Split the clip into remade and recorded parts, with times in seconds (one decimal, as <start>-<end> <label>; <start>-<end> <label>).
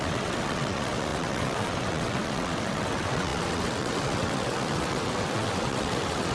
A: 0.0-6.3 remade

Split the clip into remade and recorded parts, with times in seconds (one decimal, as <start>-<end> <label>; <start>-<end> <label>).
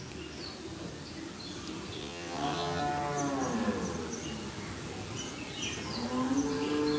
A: 0.0-2.0 recorded; 2.0-2.8 remade; 2.8-7.0 recorded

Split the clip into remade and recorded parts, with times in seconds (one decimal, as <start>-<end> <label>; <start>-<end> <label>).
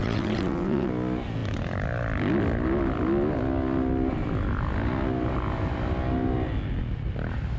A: 0.0-0.9 remade; 0.9-7.6 recorded